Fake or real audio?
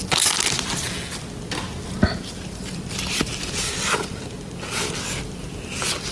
real